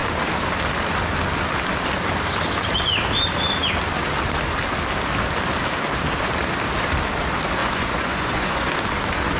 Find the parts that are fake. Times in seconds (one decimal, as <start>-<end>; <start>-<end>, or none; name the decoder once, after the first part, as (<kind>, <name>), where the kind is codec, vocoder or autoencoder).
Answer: 7.6-8.7 (vocoder, Vocos)